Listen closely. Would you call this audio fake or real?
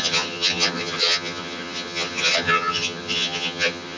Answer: fake